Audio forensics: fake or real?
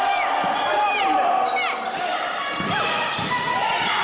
real